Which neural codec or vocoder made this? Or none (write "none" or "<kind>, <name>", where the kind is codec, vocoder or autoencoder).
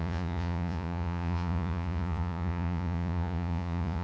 vocoder, Vocos